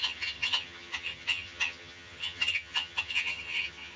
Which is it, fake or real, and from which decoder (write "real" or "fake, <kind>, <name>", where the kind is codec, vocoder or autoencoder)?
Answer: fake, vocoder, HiFi-GAN